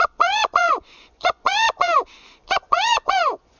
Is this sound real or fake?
fake